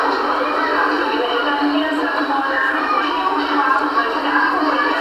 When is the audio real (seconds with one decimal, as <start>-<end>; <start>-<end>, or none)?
0.0-0.9; 3.9-5.0